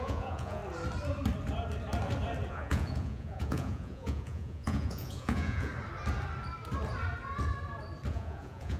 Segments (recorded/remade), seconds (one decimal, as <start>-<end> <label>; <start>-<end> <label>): 0.0-0.6 remade; 0.6-2.5 recorded; 2.5-5.7 remade; 5.7-8.1 recorded; 8.1-8.8 remade

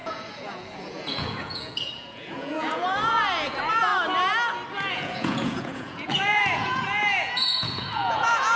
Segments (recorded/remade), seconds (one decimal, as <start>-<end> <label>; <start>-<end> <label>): 0.0-3.9 remade; 3.9-4.9 recorded; 4.9-8.6 remade

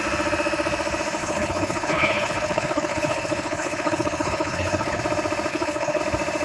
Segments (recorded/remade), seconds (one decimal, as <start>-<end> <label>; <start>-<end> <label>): 0.0-1.2 recorded; 1.2-5.0 remade; 5.0-5.5 recorded; 5.5-6.0 remade; 6.0-6.4 recorded

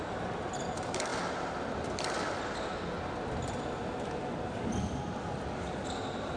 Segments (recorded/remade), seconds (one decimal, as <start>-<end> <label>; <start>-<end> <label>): 0.0-6.4 recorded

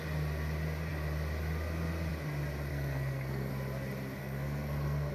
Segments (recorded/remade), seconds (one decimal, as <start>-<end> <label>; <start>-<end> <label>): 0.0-2.7 recorded; 2.7-3.5 remade; 3.5-4.2 recorded; 4.2-5.1 remade

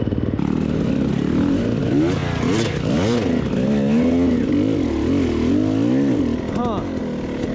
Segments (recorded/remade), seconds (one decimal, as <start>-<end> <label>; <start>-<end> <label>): 0.0-7.5 recorded